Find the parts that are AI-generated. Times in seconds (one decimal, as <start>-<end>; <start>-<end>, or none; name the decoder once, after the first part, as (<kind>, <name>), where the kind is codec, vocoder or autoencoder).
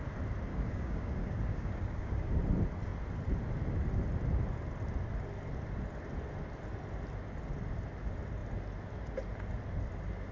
0.5-2.3 (codec, DAC)